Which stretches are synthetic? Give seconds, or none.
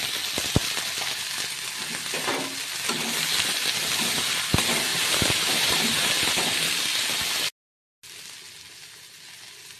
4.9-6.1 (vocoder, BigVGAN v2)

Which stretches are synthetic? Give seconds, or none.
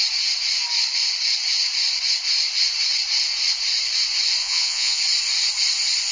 4.4-5.0 (vocoder, Vocos)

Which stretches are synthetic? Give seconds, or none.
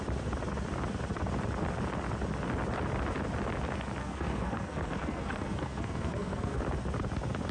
4.0-6.6 (codec, SNAC)